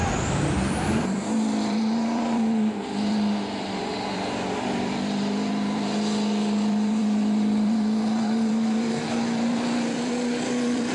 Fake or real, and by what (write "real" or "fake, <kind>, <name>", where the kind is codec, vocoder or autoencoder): fake, vocoder, BigVGAN v2